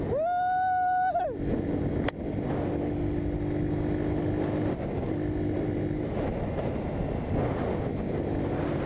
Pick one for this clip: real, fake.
real